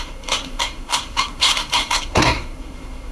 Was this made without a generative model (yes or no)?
no